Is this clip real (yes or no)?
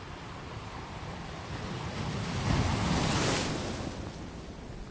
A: yes